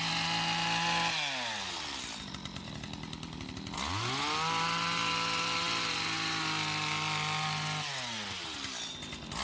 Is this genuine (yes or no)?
yes